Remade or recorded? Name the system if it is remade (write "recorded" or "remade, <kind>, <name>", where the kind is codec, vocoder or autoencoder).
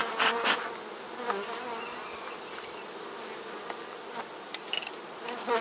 recorded